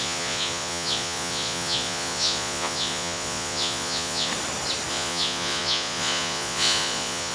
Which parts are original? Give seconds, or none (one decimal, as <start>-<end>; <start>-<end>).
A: 4.3-4.9